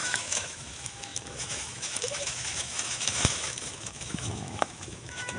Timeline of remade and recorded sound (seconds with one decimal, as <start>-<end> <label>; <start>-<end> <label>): 0.0-5.4 remade